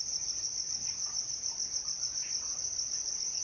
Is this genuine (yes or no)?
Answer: yes